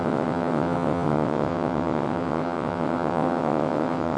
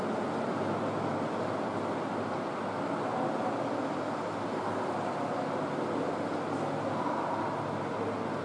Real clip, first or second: second